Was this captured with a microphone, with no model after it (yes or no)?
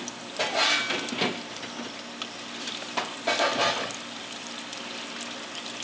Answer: yes